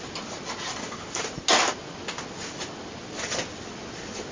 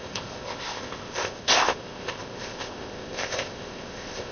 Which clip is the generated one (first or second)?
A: second